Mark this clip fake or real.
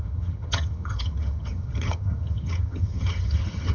fake